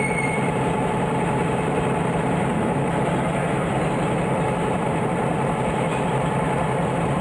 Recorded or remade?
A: remade